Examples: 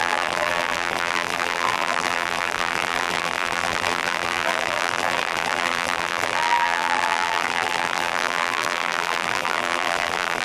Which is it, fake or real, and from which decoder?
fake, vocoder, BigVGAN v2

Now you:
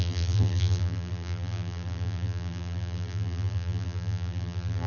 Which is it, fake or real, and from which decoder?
fake, vocoder, BigVGAN v2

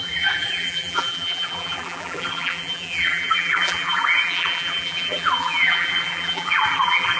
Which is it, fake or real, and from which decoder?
fake, vocoder, BigVGAN v2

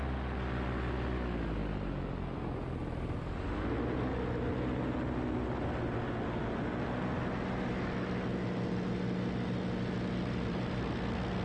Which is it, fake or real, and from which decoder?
real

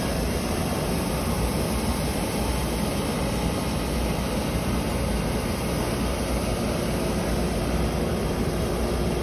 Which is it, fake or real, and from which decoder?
real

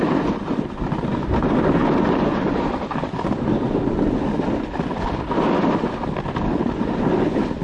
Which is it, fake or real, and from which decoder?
real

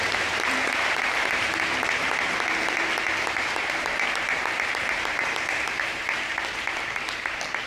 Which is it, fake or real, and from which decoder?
fake, vocoder, BigVGAN v2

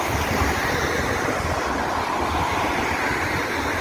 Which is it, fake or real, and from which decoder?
real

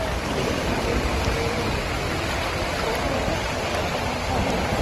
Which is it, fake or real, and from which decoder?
real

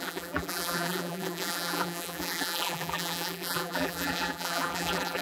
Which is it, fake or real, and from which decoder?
fake, vocoder, BigVGAN v2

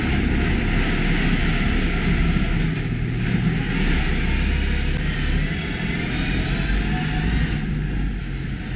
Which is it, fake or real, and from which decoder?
real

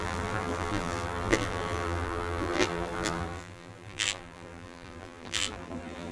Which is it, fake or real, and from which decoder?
fake, vocoder, BigVGAN v2